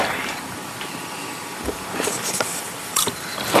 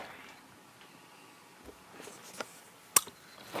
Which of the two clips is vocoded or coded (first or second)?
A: first